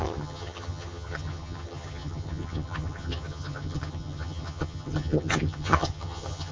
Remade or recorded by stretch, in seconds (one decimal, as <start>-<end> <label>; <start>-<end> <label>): 0.0-6.5 remade